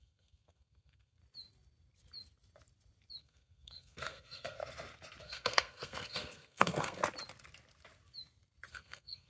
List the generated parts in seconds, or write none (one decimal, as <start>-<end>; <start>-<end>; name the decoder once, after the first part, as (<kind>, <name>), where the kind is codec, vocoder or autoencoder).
0.0-1.2 (codec, SNAC); 3.2-4.6; 5.2-7.0; 8.7-9.3